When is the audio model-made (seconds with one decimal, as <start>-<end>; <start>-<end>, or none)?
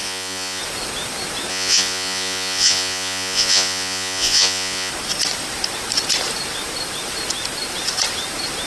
0.0-0.6; 1.5-4.9